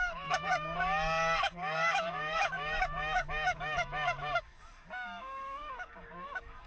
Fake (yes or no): yes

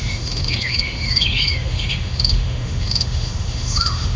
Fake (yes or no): yes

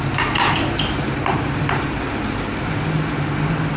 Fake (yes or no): no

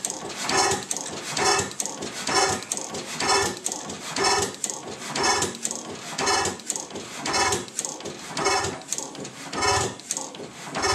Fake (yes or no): no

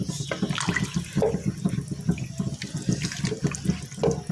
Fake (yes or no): no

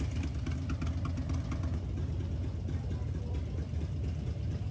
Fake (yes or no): no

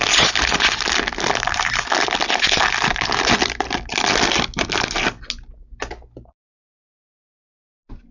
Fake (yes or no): no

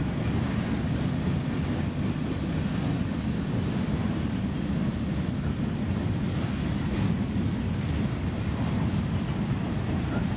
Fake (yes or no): no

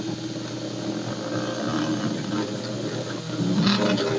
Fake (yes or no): no